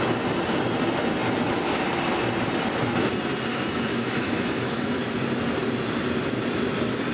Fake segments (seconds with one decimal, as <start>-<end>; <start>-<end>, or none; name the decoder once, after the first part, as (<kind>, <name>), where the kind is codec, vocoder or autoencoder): 3.5-5.0 (autoencoder, DAC-VAE)